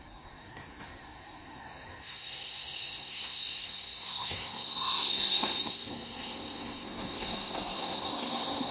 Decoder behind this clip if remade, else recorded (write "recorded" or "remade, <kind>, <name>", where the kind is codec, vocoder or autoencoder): remade, codec, SNAC